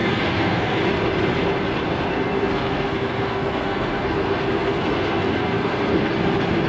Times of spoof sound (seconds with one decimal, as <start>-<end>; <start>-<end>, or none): 0.0-0.8; 2.1-6.1